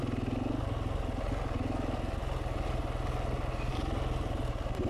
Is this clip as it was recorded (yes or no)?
yes